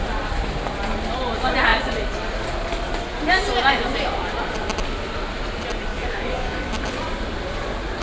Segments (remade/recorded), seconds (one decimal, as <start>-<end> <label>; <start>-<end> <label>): 0.0-5.9 recorded; 5.9-6.8 remade; 6.8-8.0 recorded